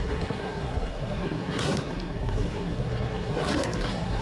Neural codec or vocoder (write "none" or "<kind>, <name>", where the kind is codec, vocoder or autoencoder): codec, SNAC